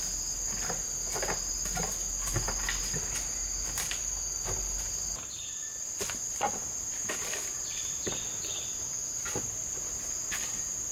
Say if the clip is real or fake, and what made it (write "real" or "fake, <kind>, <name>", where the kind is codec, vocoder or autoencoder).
real